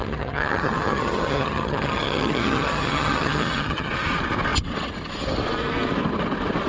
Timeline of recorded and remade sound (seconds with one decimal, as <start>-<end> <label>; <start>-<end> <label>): 0.0-3.9 remade; 3.9-6.7 recorded